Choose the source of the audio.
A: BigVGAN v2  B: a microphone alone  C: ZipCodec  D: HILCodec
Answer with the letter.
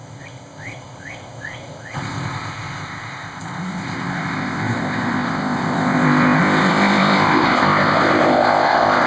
C